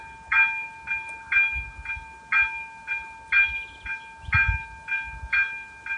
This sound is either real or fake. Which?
real